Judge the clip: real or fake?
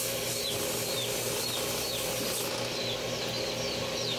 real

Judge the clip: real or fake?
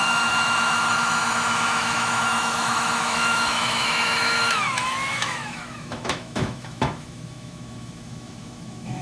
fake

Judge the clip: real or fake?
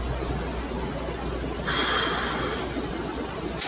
real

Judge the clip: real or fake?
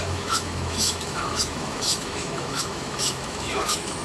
fake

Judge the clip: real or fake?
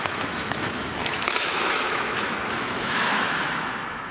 fake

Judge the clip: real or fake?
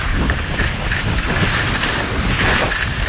real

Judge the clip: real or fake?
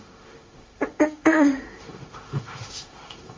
fake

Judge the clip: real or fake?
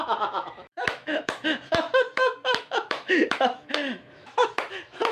fake